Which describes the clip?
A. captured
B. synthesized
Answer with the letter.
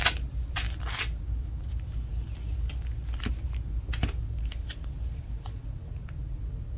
A